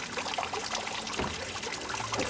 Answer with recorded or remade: recorded